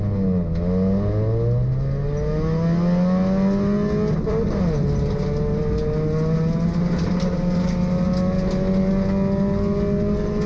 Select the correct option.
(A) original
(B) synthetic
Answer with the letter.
A